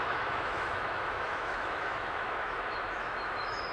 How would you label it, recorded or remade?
remade